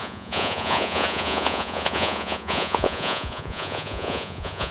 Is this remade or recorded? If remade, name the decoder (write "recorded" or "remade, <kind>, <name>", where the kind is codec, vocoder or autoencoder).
remade, vocoder, Vocos